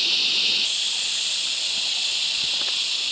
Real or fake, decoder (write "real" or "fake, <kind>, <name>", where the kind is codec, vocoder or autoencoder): real